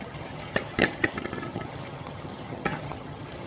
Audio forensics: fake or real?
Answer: fake